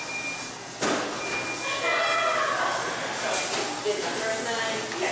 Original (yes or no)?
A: yes